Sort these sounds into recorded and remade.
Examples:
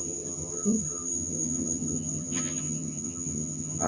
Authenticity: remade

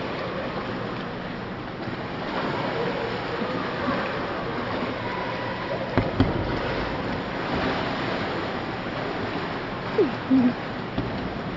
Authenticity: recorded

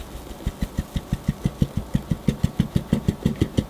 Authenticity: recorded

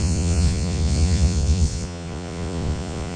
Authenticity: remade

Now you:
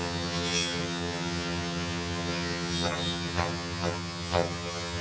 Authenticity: remade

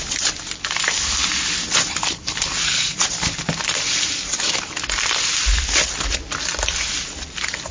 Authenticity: recorded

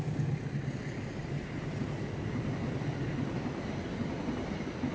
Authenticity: recorded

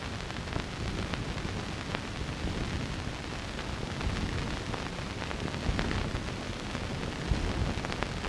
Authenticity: recorded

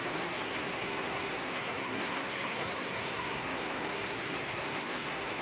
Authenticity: remade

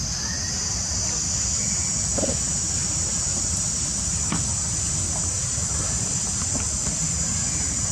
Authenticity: recorded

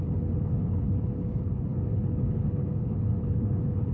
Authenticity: remade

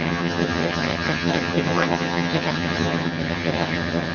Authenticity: remade